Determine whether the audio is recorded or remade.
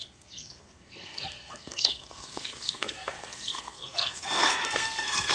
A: remade